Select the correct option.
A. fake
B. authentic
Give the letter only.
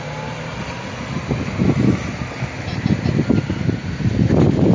B